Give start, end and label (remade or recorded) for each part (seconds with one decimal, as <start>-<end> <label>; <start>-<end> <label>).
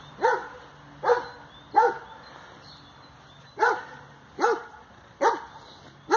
0.0-6.2 recorded